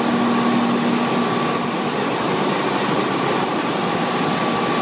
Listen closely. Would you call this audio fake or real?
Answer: real